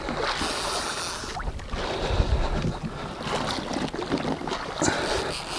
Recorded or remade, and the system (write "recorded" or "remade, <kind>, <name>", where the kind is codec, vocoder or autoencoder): recorded